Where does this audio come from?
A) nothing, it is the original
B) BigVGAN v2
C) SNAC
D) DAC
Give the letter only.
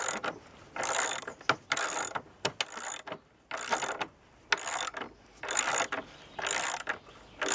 A